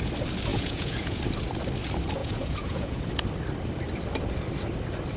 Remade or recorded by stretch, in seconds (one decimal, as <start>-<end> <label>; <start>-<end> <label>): 0.0-0.5 recorded; 0.5-1.2 remade; 1.2-2.2 recorded; 2.2-3.1 remade; 3.1-5.2 recorded